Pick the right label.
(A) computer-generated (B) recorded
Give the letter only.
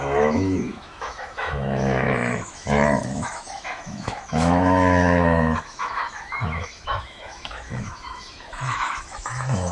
A